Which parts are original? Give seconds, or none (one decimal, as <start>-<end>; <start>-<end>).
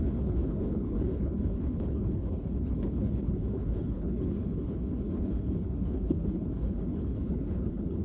none